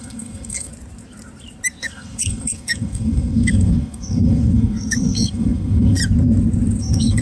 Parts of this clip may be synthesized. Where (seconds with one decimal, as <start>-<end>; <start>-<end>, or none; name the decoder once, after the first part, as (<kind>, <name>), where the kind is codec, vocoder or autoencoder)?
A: 0.0-0.7 (codec, SNAC); 1.8-6.0; 6.8-7.2